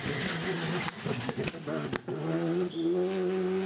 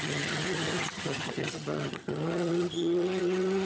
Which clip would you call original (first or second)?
first